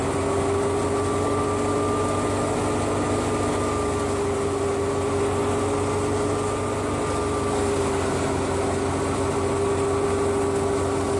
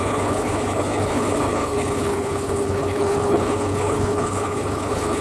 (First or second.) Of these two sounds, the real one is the first